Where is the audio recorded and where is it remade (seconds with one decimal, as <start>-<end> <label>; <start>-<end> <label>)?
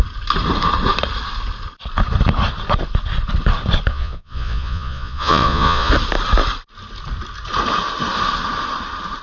0.0-3.9 recorded; 3.9-5.9 remade; 5.9-9.2 recorded